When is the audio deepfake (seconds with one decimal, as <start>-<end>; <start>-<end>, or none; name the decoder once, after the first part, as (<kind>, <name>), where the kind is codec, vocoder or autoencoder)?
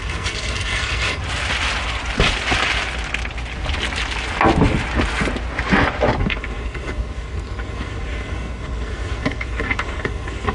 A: 0.0-1.2 (codec, SNAC); 6.2-10.5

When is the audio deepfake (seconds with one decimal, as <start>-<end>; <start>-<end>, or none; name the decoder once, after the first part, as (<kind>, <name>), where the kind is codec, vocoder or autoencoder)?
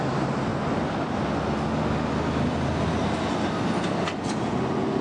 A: none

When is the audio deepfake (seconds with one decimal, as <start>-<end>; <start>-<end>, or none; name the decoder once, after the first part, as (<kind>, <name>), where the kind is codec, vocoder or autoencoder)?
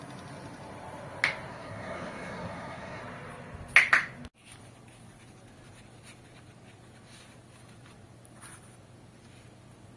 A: 1.5-3.0 (codec, SNAC)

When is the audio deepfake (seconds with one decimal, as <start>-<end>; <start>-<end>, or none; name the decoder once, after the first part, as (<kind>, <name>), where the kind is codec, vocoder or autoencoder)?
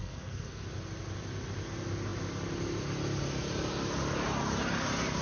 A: 0.0-0.6 (codec, SNAC)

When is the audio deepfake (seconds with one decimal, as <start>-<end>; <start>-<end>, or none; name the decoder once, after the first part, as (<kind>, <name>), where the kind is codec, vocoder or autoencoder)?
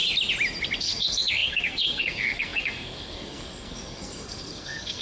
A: 0.8-5.0 (codec, SNAC)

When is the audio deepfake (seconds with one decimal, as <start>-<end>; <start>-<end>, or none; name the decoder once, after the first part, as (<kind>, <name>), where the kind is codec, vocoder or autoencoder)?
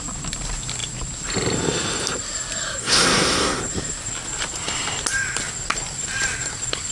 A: 2.8-3.6 (codec, SNAC)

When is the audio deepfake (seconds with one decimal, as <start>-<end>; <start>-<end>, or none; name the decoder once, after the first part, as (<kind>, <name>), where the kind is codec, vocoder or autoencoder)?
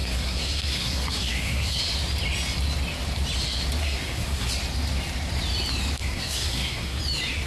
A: 0.0-1.8 (codec, SNAC); 3.8-4.5; 6.0-7.0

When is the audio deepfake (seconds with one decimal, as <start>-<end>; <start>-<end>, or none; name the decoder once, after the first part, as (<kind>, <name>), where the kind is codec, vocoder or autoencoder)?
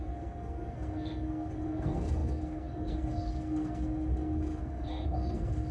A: 0.0-5.7 (codec, SNAC)